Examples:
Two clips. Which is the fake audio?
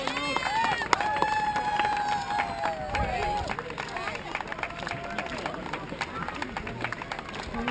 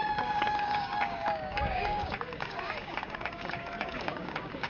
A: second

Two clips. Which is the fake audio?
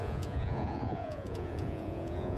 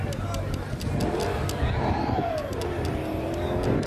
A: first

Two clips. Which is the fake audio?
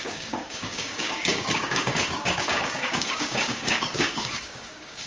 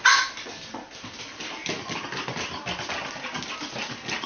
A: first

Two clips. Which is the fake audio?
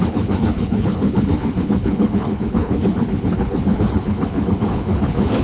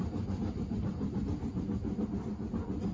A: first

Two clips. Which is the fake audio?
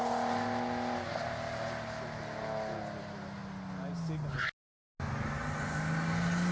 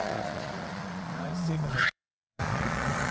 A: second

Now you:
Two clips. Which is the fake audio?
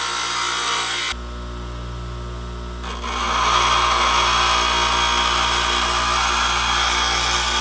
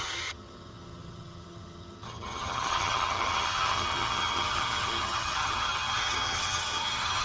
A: second